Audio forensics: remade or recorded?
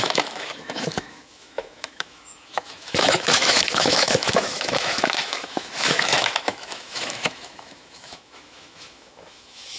remade